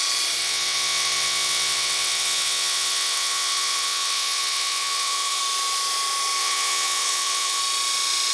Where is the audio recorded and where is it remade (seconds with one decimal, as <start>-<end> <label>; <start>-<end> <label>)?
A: 0.0-0.4 recorded; 0.4-5.4 remade; 5.4-6.4 recorded; 6.4-7.6 remade; 7.6-8.3 recorded

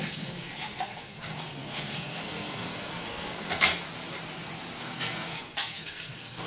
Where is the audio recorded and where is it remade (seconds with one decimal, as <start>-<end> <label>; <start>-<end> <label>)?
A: 0.0-3.7 remade; 3.7-4.8 recorded; 4.8-6.5 remade

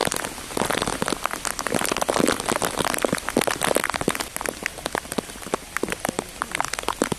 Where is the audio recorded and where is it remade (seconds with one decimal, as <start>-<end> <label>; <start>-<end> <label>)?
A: 0.0-7.2 recorded

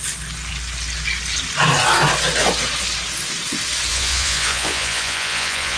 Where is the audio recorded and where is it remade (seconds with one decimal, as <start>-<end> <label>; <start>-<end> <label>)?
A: 0.0-3.9 recorded; 3.9-5.8 remade

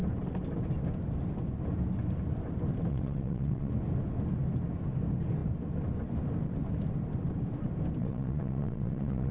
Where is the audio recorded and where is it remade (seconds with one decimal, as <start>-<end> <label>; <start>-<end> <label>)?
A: 0.0-2.9 recorded; 2.9-3.7 remade; 3.7-8.0 recorded; 8.0-9.3 remade

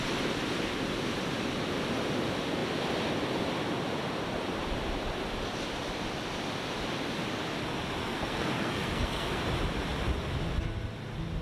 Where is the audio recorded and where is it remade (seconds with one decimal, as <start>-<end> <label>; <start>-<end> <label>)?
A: 0.0-8.0 recorded; 8.0-9.4 remade; 9.4-11.4 recorded

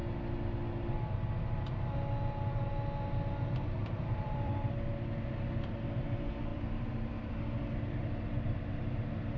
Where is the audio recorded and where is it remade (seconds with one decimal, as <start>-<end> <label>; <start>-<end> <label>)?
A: 0.0-3.8 recorded; 3.8-4.6 remade; 4.6-6.5 recorded; 6.5-7.3 remade; 7.3-9.4 recorded

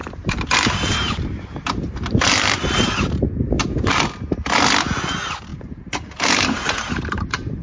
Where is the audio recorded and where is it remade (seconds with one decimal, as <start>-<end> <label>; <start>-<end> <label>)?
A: 0.0-3.3 remade; 3.3-5.5 recorded; 5.5-7.6 remade